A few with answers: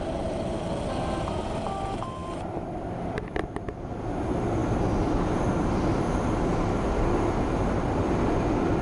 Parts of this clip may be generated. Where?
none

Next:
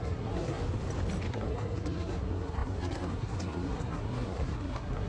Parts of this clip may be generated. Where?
0.0-0.6 (codec, SNAC); 1.3-5.1